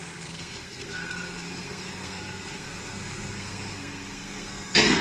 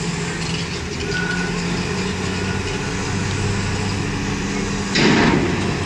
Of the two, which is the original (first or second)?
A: second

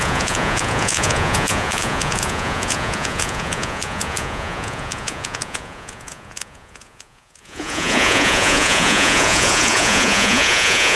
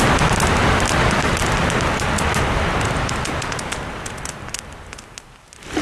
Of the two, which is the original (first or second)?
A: second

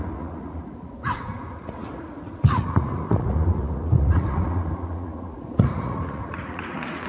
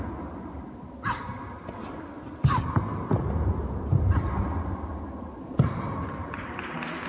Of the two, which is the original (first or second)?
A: second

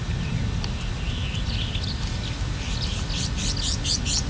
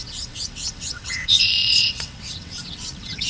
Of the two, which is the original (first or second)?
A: first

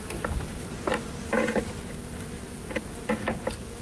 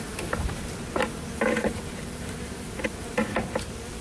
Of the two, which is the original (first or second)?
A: first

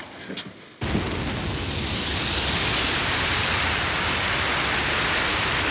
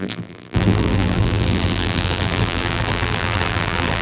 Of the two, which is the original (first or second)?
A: first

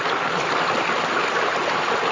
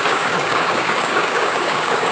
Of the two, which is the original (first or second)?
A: first